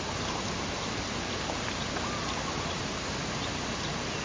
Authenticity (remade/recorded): recorded